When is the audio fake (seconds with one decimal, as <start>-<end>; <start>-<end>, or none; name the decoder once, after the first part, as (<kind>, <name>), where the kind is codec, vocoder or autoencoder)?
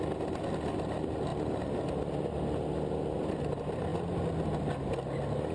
none